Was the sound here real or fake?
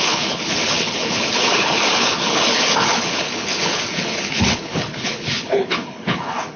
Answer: fake